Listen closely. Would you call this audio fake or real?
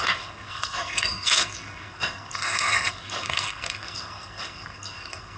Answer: fake